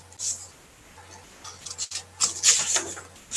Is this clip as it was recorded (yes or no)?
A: yes